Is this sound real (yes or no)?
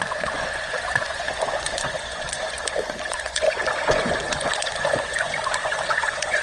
no